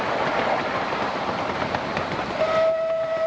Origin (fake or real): real